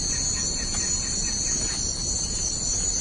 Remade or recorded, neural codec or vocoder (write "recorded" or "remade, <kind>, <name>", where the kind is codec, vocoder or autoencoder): recorded